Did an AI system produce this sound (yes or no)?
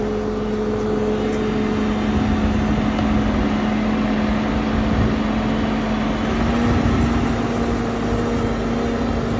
no